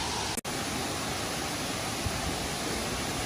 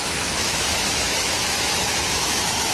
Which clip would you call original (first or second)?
first